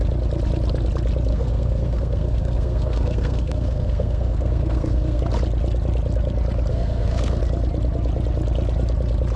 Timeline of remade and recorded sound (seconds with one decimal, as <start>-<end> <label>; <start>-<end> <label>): 0.0-1.3 recorded; 1.3-5.2 remade; 5.2-6.7 recorded; 6.7-7.4 remade; 7.4-9.4 recorded